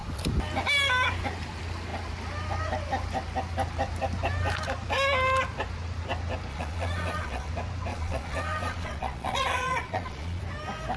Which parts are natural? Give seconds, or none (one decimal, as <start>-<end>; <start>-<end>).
0.0-6.5; 7.5-7.9; 10.4-11.0